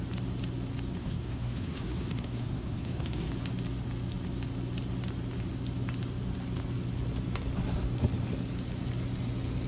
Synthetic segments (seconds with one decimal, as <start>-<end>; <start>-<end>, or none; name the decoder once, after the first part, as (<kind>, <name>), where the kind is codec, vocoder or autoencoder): 1.0-3.3 (codec, SNAC)